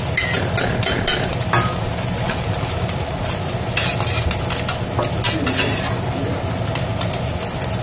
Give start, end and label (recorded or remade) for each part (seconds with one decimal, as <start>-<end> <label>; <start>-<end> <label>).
0.0-1.3 recorded; 1.3-3.3 remade; 3.3-7.8 recorded